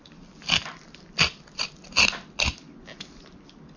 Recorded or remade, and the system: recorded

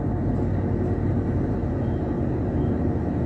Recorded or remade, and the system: recorded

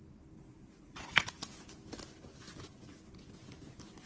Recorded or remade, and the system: recorded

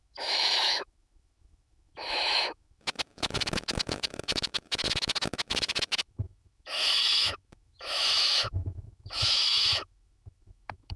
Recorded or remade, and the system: remade, autoencoder, DAC-VAE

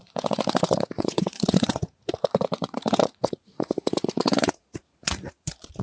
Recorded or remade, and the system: remade, vocoder, Vocos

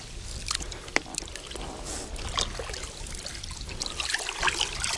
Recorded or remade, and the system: recorded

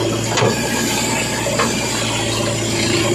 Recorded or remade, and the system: recorded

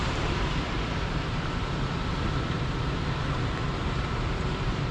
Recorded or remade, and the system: remade, vocoder, BigVGAN v2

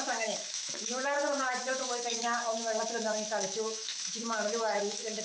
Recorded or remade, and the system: remade, autoencoder, DAC-VAE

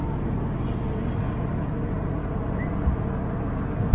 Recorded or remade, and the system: recorded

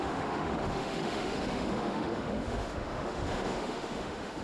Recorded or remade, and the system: remade, autoencoder, DAC-VAE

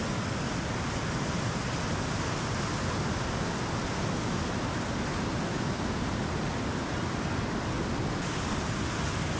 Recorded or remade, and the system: recorded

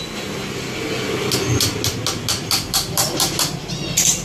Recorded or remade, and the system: recorded